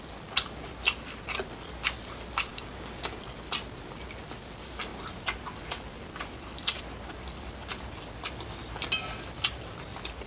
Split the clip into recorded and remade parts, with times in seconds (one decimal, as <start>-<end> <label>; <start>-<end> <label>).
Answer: 0.0-2.5 recorded; 2.5-3.2 remade; 3.2-10.3 recorded